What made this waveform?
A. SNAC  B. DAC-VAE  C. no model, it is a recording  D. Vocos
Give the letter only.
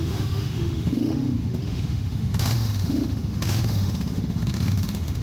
B